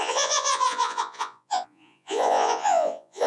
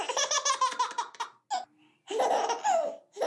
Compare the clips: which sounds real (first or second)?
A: second